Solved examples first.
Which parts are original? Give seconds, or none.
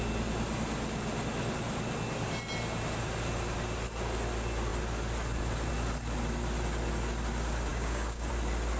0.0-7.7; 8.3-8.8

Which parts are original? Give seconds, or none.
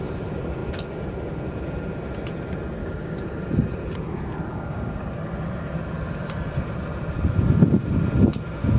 0.0-2.8; 3.3-4.5; 5.3-8.8